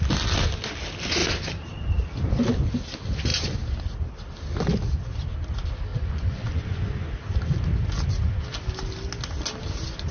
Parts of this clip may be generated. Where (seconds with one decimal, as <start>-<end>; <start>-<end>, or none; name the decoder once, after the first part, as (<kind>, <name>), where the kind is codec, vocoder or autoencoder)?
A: 5.9-7.1 (vocoder, Vocos)